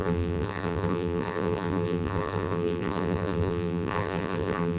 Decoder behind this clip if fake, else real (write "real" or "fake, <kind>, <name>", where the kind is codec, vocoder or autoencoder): fake, vocoder, BigVGAN v2